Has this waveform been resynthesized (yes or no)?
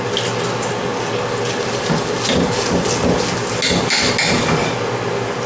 no